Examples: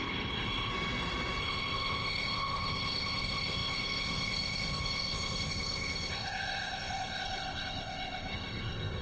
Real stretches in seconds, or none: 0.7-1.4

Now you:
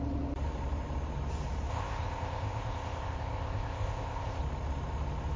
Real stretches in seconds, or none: 0.0-1.7; 4.4-5.4

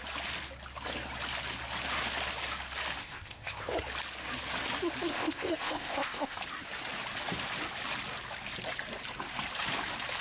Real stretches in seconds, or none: 0.0-3.0; 3.7-5.1; 6.4-10.2

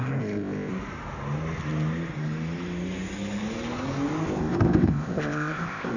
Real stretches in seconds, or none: 0.7-4.3

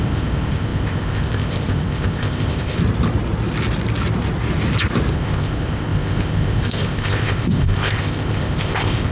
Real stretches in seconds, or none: 2.8-5.1

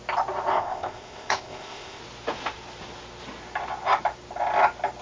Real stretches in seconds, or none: 0.0-0.5; 2.0-5.0

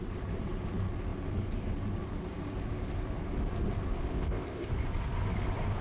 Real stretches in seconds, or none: 0.0-4.1; 4.7-5.8

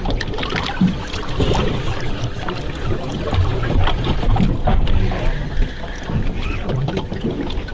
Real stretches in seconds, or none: 0.0-7.7